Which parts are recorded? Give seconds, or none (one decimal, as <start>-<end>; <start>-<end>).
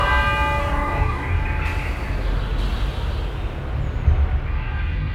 0.0-0.6; 1.4-4.5